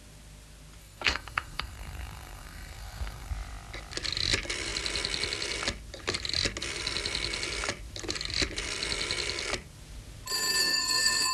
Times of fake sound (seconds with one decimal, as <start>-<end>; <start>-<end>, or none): 0.8-3.3; 10.6-11.3